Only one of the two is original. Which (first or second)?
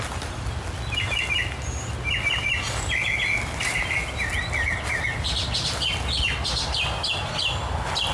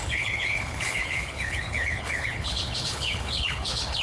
first